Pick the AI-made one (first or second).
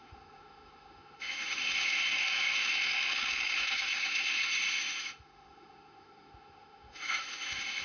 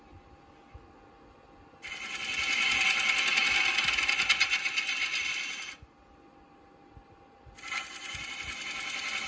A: first